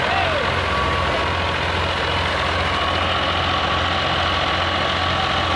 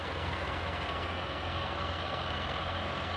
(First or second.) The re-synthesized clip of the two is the second